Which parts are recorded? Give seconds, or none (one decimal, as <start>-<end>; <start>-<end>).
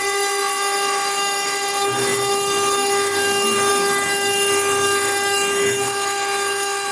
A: none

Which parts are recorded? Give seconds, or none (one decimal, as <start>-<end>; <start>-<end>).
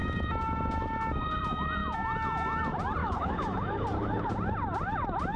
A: 0.0-3.0; 4.3-5.4